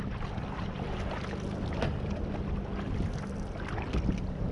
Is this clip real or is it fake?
real